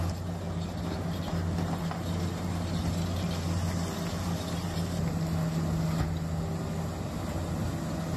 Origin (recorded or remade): recorded